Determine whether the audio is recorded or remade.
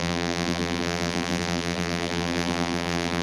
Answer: remade